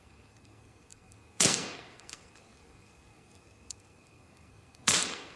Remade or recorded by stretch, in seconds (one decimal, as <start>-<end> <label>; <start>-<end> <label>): 0.0-5.4 remade